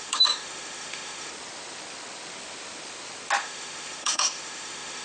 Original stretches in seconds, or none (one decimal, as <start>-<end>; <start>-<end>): 1.3-3.4